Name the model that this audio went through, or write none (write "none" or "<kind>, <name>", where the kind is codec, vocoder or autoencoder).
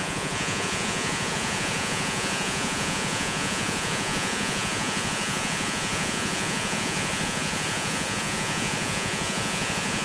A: vocoder, Vocos